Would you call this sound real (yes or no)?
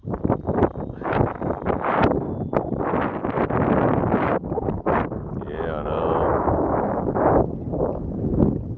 yes